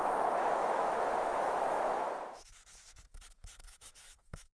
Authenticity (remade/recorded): remade